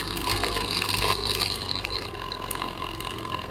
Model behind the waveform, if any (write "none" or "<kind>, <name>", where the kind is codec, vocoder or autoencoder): codec, SNAC